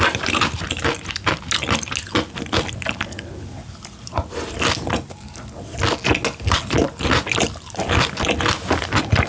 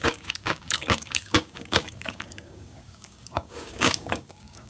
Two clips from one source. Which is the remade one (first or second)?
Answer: second